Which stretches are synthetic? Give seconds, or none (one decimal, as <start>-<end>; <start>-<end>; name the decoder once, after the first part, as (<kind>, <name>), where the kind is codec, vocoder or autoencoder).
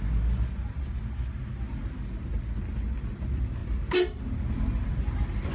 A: none